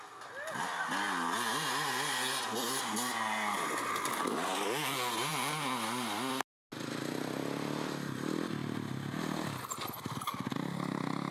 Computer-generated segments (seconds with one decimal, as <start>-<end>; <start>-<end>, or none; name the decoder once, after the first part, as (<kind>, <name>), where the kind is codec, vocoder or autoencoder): none